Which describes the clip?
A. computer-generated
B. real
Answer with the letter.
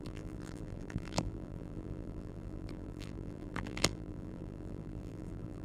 A